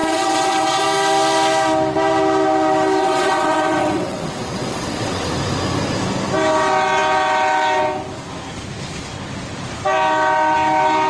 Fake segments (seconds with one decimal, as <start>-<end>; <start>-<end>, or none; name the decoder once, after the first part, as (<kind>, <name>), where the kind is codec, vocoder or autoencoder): 0.0-0.8 (vocoder, WaveNeXt); 3.0-5.3